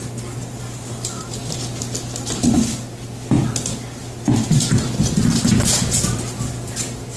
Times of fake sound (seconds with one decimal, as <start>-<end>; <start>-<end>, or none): none